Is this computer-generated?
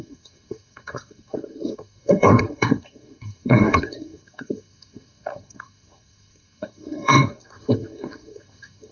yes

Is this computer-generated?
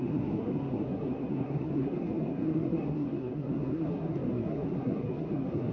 yes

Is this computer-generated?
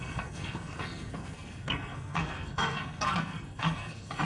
yes